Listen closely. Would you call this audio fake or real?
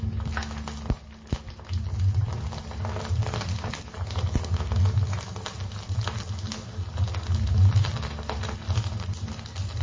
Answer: real